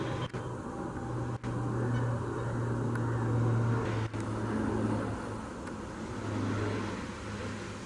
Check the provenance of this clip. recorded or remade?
recorded